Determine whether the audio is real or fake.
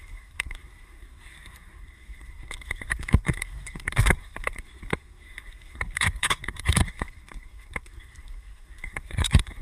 fake